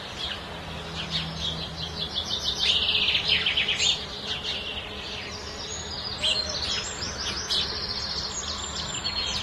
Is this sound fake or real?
real